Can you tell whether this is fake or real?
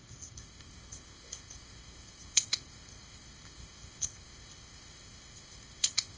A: fake